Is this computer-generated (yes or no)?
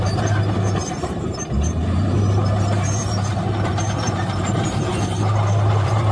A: yes